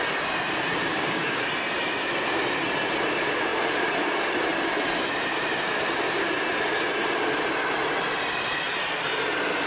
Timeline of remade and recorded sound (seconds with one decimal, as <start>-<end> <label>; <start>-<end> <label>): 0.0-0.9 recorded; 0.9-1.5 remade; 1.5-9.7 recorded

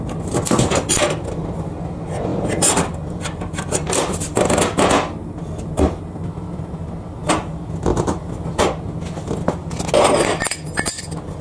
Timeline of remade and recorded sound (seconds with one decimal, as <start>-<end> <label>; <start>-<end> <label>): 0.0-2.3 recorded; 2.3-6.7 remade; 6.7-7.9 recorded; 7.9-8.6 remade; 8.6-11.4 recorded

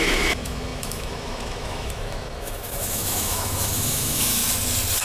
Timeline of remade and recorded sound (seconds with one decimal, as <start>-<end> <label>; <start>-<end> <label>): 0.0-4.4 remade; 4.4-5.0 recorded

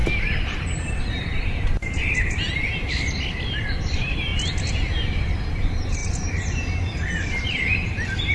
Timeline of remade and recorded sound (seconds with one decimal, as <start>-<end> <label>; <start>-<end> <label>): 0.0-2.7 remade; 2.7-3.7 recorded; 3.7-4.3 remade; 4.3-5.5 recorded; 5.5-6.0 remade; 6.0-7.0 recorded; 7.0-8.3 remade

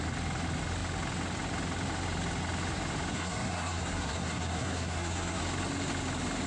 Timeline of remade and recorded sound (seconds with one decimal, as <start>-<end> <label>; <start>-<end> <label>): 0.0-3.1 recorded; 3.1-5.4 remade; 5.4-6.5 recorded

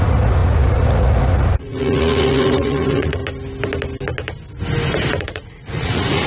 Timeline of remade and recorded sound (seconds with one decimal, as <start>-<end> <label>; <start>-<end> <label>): 0.0-3.2 remade; 3.2-5.2 recorded; 5.2-6.3 remade

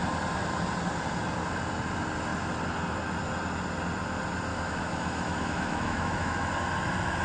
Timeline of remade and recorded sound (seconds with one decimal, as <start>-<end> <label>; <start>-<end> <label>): 0.0-4.5 recorded; 4.5-6.5 remade; 6.5-7.2 recorded

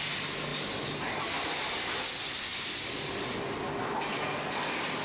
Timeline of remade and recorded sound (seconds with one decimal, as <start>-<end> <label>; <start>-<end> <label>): 0.0-0.5 recorded; 0.5-1.6 remade; 1.6-2.5 recorded; 2.5-4.0 remade; 4.0-5.0 recorded